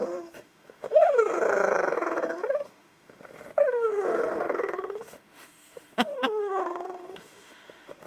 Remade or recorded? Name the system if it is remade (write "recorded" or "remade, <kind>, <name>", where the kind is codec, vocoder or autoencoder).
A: remade, autoencoder, DAC-VAE